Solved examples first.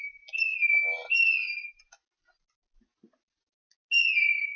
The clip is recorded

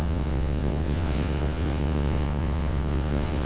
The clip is remade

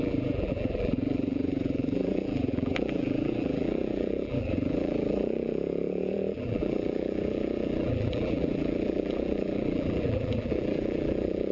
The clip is remade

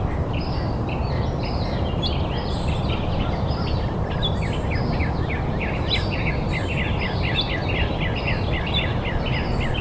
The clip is recorded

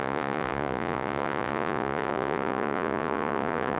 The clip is remade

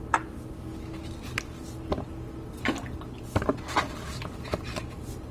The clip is recorded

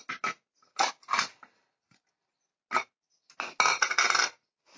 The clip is recorded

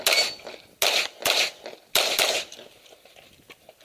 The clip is recorded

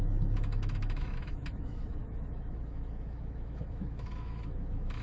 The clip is remade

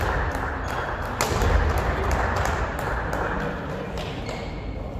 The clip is recorded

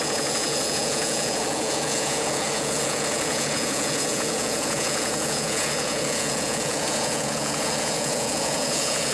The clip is remade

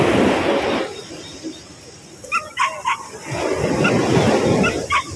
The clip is recorded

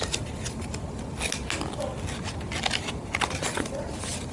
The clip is recorded